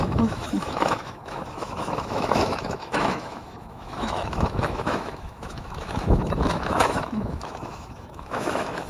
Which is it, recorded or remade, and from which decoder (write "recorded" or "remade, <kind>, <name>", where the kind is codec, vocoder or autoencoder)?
remade, autoencoder, DAC-VAE